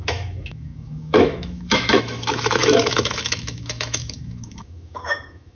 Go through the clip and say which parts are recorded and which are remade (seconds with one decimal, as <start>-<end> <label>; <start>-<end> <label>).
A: 0.0-5.5 remade